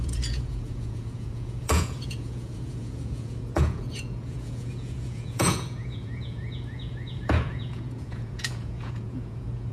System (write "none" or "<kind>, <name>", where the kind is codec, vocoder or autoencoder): vocoder, Vocos